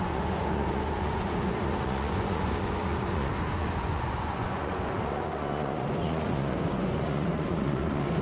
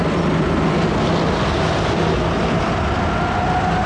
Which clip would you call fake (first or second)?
first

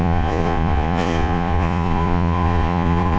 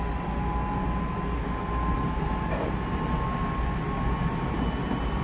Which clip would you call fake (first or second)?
first